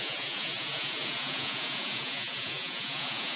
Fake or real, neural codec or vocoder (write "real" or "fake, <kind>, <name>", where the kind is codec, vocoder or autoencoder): fake, vocoder, Vocos